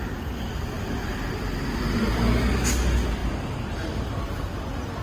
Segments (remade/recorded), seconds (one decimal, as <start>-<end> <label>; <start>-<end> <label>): 0.0-3.2 recorded; 3.2-4.4 remade; 4.4-5.0 recorded